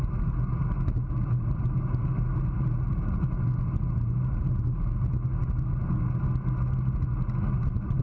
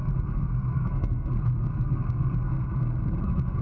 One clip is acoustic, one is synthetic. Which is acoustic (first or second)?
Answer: first